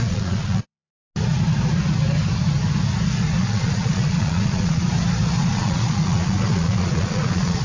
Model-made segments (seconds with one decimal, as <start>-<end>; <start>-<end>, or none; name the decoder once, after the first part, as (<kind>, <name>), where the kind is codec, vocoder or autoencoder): 0.0-0.9 (vocoder, Vocos); 3.4-4.8; 5.4-7.6